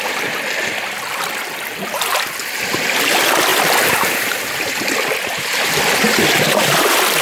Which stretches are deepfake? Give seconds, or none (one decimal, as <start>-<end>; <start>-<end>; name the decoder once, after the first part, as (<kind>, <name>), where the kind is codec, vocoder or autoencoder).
0.0-3.5 (vocoder, BigVGAN v2); 4.6-7.2